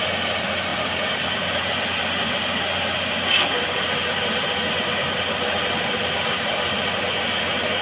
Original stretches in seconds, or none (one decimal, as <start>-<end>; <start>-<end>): 0.0-7.8